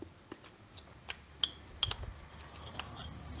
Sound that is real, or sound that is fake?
real